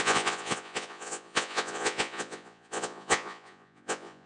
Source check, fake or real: fake